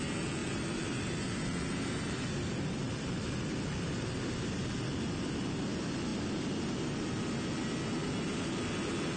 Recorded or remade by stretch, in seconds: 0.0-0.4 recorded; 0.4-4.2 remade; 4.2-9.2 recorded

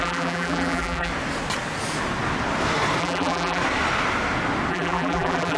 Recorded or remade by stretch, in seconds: 0.0-1.1 remade; 1.1-3.0 recorded; 3.0-3.6 remade; 3.6-4.7 recorded; 4.7-5.6 remade

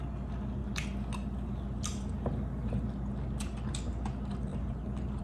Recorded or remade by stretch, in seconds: 0.0-4.5 recorded; 4.5-5.2 remade

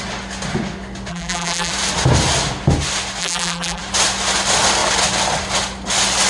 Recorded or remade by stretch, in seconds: 0.0-1.1 recorded; 1.1-1.7 remade; 1.7-3.2 recorded; 3.2-3.8 remade; 3.8-6.3 recorded

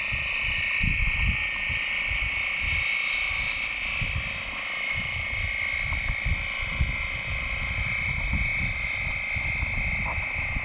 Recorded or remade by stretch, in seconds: 0.0-10.6 recorded

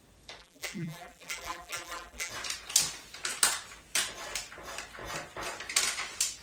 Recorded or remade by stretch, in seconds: 0.0-0.4 recorded; 0.4-2.3 remade; 2.3-6.4 recorded

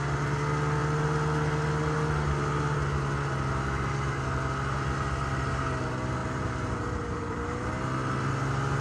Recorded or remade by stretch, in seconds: 0.0-6.2 recorded; 6.2-7.7 remade; 7.7-8.8 recorded

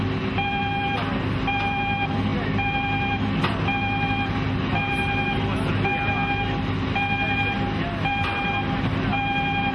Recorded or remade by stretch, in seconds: 0.0-9.7 recorded